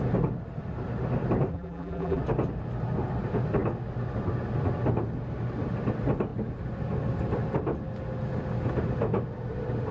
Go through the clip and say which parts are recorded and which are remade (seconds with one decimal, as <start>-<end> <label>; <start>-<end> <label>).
0.0-1.5 recorded; 1.5-2.2 remade; 2.2-9.9 recorded